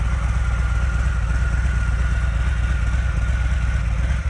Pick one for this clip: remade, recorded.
recorded